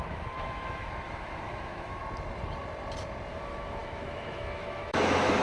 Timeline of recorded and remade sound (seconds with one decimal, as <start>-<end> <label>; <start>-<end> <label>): 0.0-2.0 remade; 2.0-3.3 recorded; 3.3-5.4 remade